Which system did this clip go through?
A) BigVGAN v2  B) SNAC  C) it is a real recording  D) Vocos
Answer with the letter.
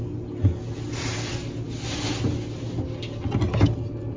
C